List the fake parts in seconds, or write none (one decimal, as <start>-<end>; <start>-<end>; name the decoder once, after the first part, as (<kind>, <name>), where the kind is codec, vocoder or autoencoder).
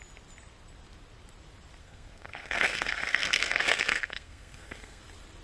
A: 1.8-5.0 (codec, SNAC)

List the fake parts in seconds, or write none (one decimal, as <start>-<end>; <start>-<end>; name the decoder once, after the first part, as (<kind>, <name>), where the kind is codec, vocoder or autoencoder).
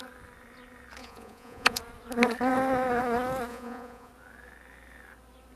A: 1.0-1.8 (vocoder, Vocos); 3.5-4.1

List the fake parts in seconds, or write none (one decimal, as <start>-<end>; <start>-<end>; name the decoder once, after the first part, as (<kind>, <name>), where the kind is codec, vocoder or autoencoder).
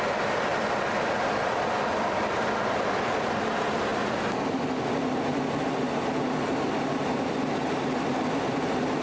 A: 0.0-0.5 (vocoder, BigVGAN v2); 1.2-3.9; 7.5-9.0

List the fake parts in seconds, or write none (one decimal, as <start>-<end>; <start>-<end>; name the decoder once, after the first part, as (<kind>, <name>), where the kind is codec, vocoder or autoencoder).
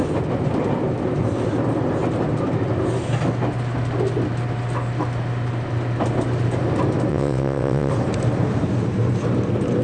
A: 7.1-7.9 (vocoder, WaveNeXt)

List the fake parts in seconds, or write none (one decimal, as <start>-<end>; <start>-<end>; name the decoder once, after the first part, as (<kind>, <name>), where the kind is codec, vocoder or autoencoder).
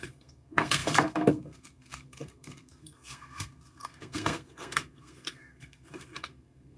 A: 0.0-6.8 (codec, SNAC)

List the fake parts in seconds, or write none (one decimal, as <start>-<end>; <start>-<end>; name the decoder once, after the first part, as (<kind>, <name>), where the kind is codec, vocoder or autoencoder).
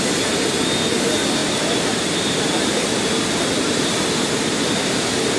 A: 1.4-4.6 (vocoder, BigVGAN v2)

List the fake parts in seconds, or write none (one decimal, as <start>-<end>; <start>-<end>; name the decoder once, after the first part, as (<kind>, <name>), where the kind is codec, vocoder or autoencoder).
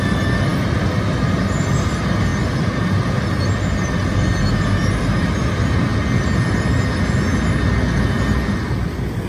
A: none